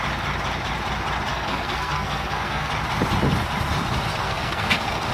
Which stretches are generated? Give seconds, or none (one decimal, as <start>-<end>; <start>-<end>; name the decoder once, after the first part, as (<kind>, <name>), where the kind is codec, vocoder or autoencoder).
1.3-2.7 (codec, SNAC); 4.2-5.1